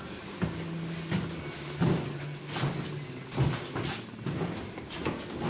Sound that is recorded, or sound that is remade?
recorded